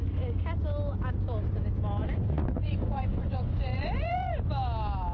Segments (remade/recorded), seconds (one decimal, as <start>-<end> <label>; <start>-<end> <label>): 0.0-2.0 recorded; 2.0-4.5 remade; 4.5-5.1 recorded